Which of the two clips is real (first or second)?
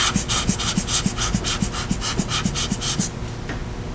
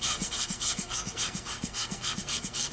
first